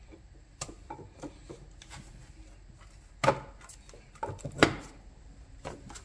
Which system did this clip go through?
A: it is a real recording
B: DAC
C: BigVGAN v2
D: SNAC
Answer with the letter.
A